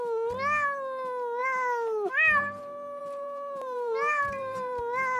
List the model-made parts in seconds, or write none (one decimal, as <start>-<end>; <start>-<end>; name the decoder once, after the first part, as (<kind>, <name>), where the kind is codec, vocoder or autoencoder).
3.0-4.8 (vocoder, BigVGAN v2)